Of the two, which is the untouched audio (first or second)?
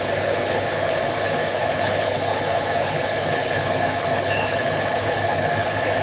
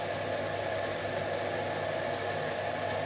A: second